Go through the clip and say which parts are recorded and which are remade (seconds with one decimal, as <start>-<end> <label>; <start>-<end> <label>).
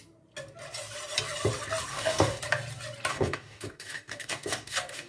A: 0.0-1.9 recorded; 1.9-2.4 remade; 2.4-3.1 recorded; 3.1-5.1 remade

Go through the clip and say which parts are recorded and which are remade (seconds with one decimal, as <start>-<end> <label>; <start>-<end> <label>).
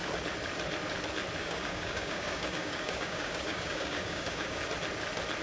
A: 0.0-1.4 recorded; 1.4-4.6 remade; 4.6-5.4 recorded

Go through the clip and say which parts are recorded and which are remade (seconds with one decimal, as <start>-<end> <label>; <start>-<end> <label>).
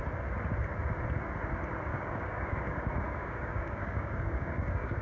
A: 0.0-1.9 recorded; 1.9-5.0 remade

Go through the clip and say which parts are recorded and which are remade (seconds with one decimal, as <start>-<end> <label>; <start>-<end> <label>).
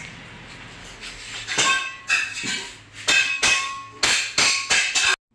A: 0.0-0.8 recorded; 0.8-2.0 remade; 2.0-3.2 recorded; 3.2-4.0 remade; 4.0-5.3 recorded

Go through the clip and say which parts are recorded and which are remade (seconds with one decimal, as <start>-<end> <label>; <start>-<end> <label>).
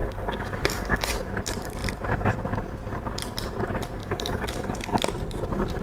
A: 0.0-1.1 remade; 1.1-4.0 recorded; 4.0-5.0 remade; 5.0-5.8 recorded